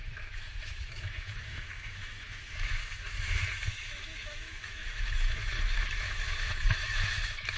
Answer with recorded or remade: remade